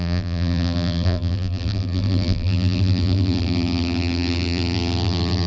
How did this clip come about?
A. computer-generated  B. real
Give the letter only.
A